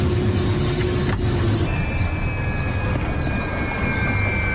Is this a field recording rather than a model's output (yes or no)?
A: yes